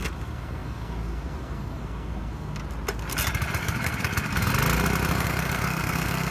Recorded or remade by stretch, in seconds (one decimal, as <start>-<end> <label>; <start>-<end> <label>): 0.0-2.6 remade; 2.6-3.6 recorded; 3.6-4.5 remade; 4.5-5.1 recorded; 5.1-6.3 remade